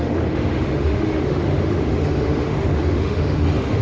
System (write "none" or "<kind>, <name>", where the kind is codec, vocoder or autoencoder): autoencoder, DAC-VAE